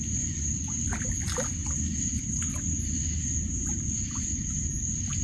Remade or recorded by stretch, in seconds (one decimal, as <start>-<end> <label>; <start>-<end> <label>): 0.0-5.2 recorded

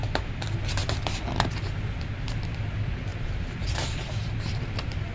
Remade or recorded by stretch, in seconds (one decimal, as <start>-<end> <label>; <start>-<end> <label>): 0.0-3.1 recorded; 3.1-5.1 remade

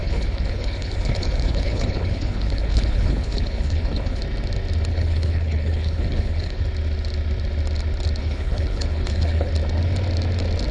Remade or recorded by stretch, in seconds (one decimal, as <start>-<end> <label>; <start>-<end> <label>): 0.0-4.2 remade; 4.2-4.9 recorded; 4.9-6.6 remade; 6.6-8.2 recorded; 8.2-9.5 remade; 9.5-10.7 recorded

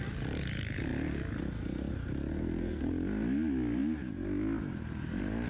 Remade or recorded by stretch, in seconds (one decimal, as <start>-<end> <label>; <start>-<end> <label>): 0.0-2.3 recorded; 2.3-2.9 remade; 2.9-5.5 recorded

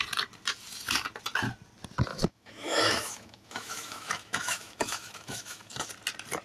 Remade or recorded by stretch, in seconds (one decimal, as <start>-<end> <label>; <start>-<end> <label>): 0.0-2.1 recorded; 2.1-5.9 remade; 5.9-6.4 recorded

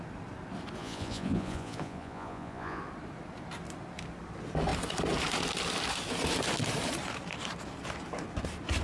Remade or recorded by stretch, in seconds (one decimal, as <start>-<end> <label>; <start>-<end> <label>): 0.0-0.8 recorded; 0.8-2.8 remade; 2.8-8.8 recorded

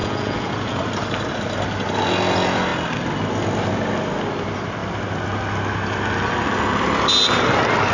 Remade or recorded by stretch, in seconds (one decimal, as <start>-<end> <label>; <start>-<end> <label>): 0.0-0.8 remade; 0.8-7.9 recorded